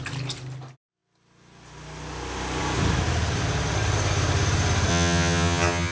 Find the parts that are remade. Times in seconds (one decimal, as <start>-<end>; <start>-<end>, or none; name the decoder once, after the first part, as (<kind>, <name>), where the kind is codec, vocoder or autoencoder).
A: 4.9-5.9 (vocoder, HiFi-GAN)